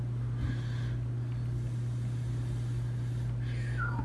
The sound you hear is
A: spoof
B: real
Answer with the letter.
B